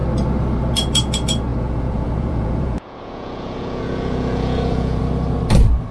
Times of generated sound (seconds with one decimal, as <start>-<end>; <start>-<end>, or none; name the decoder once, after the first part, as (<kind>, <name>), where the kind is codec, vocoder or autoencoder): 1.5-5.0 (vocoder, Vocos)